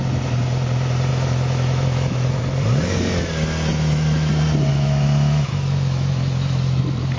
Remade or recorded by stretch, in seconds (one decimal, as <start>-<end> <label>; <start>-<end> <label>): 0.0-1.1 recorded; 1.1-2.4 remade; 2.4-3.7 recorded; 3.7-4.3 remade; 4.3-4.7 recorded; 4.7-6.8 remade; 6.8-7.2 recorded